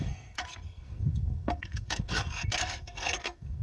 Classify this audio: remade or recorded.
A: remade